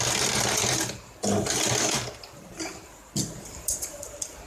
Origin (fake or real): fake